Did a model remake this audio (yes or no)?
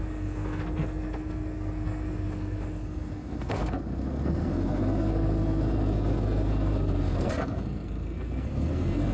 yes